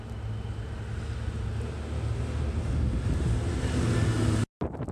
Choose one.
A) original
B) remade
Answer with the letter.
A